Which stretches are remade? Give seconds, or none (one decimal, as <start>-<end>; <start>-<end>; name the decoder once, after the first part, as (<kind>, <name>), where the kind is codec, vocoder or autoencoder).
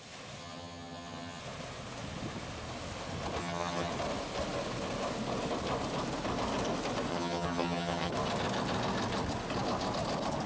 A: 0.4-1.4 (vocoder, HiFi-GAN); 3.4-3.9; 7.1-8.1